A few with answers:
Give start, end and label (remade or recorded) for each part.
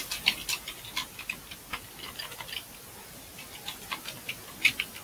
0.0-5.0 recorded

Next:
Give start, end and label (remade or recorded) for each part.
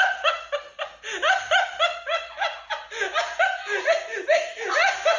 0.0-5.2 recorded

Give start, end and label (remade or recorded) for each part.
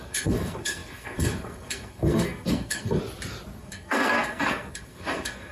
0.0-3.0 remade; 3.0-3.6 recorded; 3.6-5.5 remade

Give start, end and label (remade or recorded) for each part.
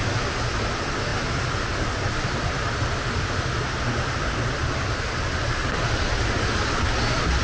0.0-7.4 recorded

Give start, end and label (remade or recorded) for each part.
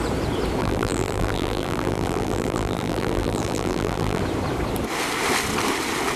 0.0-0.6 recorded; 0.6-4.2 remade; 4.2-6.2 recorded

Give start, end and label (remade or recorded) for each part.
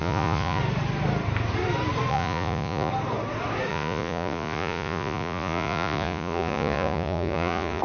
0.0-0.6 remade; 0.6-2.1 recorded; 2.1-2.9 remade; 2.9-3.7 recorded; 3.7-7.8 remade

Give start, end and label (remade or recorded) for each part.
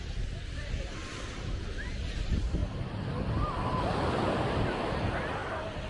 0.0-5.9 recorded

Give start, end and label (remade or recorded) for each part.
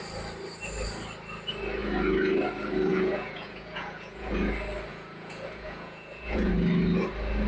0.0-2.9 recorded; 2.9-4.3 remade; 4.3-4.9 recorded; 4.9-6.5 remade; 6.5-7.5 recorded